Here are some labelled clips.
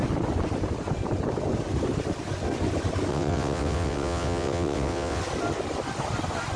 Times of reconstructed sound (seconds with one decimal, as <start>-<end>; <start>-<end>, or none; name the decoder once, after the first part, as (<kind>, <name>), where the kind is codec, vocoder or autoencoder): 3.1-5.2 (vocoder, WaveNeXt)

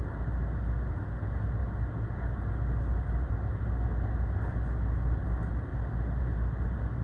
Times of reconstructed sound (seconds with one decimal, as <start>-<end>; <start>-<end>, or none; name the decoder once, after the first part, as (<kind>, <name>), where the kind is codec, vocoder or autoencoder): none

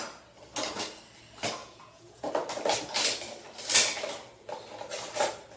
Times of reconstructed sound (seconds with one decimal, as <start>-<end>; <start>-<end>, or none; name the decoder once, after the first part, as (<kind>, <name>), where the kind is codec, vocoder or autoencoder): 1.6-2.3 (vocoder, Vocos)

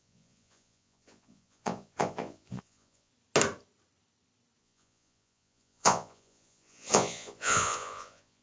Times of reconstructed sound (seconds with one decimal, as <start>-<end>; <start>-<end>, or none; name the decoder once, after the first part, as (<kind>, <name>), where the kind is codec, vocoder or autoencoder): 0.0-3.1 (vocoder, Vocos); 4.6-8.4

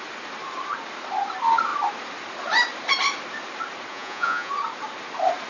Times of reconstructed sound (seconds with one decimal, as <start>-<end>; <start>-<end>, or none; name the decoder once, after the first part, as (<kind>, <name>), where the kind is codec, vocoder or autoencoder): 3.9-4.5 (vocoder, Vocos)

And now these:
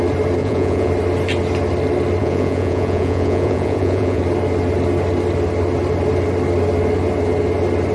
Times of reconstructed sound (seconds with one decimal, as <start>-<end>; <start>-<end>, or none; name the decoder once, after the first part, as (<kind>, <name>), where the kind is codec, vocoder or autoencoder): 0.4-0.9 (vocoder, Vocos); 2.2-4.2

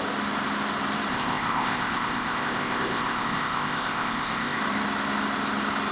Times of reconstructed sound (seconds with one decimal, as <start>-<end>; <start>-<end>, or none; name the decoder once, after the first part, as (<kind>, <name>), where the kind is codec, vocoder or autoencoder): 1.1-4.6 (codec, ZipCodec)